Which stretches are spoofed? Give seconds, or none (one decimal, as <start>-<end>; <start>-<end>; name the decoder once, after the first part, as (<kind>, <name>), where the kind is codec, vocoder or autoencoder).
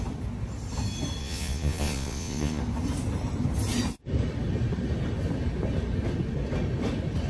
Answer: 1.2-2.6 (vocoder, Vocos)